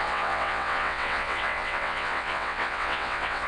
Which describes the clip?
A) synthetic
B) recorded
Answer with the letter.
A